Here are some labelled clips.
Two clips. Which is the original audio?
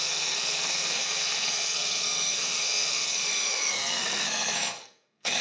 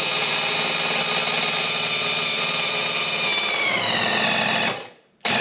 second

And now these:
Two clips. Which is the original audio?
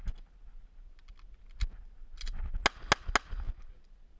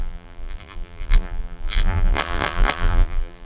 first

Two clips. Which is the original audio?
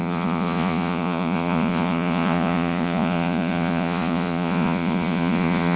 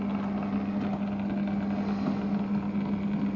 second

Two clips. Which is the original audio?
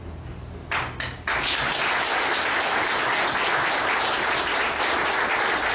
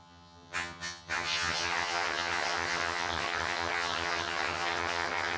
first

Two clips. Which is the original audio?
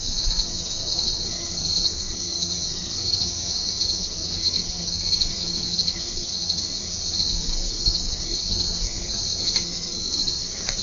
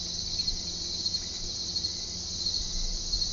second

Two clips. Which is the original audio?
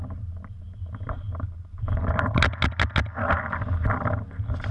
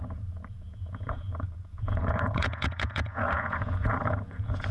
first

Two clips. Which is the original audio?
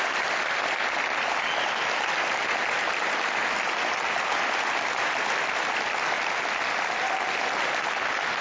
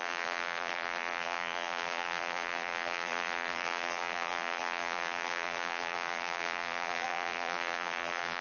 first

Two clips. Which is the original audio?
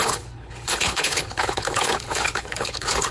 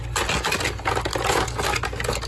second